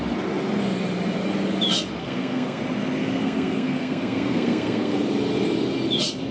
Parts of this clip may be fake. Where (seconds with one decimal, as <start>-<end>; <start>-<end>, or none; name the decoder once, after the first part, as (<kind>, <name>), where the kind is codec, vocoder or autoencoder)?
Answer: 2.0-2.6 (codec, SNAC); 3.0-5.0